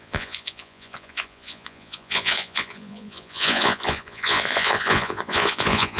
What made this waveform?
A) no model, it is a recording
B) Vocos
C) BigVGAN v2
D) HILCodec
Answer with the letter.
B